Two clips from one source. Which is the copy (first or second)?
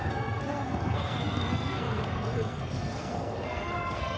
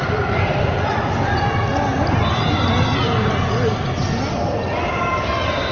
first